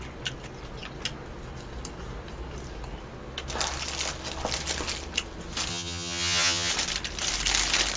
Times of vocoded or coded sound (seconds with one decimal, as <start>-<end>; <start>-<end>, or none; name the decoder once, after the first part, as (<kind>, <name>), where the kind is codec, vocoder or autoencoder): 5.7-6.7 (vocoder, HiFi-GAN)